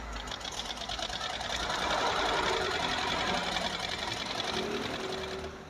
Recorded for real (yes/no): yes